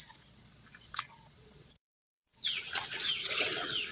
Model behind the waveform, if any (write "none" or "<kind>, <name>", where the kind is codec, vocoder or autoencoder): vocoder, WaveNeXt